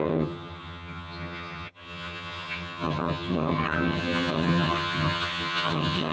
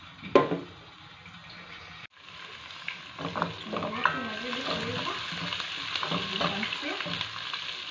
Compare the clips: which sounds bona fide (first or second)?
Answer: second